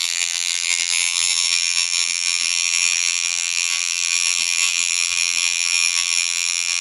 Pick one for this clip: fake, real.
fake